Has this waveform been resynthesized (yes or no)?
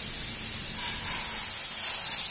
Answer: no